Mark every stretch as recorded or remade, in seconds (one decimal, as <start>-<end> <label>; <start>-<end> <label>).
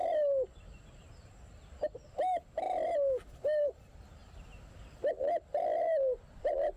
0.0-6.8 recorded